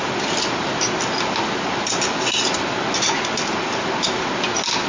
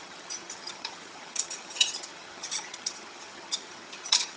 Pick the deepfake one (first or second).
second